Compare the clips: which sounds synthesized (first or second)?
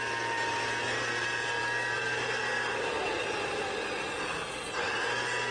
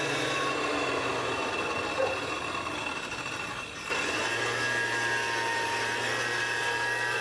second